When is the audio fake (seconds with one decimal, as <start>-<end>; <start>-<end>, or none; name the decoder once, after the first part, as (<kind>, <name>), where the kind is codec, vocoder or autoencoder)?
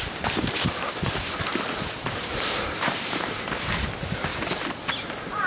0.0-4.3 (vocoder, BigVGAN v2)